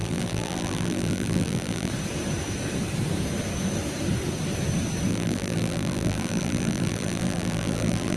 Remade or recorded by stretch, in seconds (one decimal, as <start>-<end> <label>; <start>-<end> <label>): 0.0-1.9 remade; 1.9-5.1 recorded; 5.1-8.2 remade